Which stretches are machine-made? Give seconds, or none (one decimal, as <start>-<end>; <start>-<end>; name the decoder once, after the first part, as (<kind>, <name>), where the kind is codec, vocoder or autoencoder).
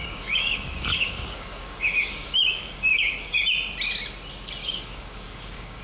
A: 0.0-3.4 (codec, DAC); 4.6-5.8